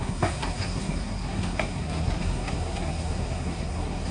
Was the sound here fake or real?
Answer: fake